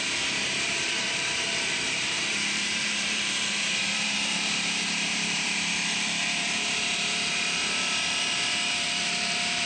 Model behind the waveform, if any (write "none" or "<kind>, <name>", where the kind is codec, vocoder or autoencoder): vocoder, BigVGAN v2